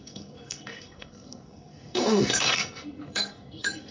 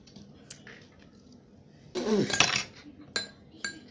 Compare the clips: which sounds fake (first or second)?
first